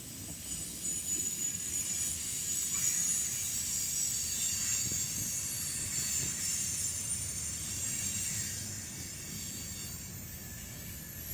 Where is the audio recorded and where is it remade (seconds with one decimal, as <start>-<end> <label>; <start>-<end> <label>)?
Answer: 0.0-11.3 recorded